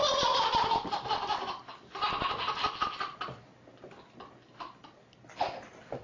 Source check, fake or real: real